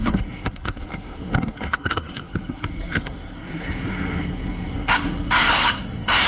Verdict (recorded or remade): remade